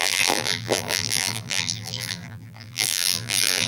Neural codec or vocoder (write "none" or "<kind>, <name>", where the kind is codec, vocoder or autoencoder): vocoder, BigVGAN v2